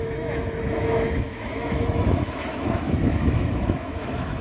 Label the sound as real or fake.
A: fake